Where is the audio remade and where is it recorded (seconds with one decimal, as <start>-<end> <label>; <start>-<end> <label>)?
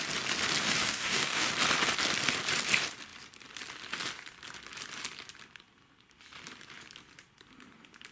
0.0-0.8 recorded; 0.8-1.5 remade; 1.5-8.1 recorded